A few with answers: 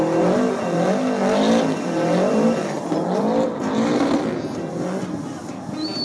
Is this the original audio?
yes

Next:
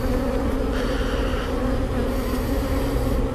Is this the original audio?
yes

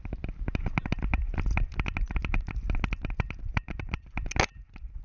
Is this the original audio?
yes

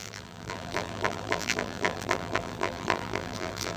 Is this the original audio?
no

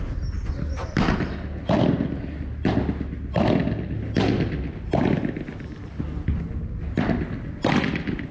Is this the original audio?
yes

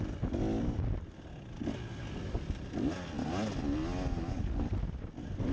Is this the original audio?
yes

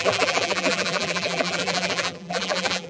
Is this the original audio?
no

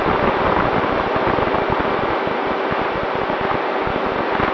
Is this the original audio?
yes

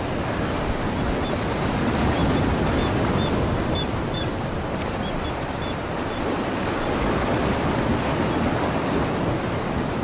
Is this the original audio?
yes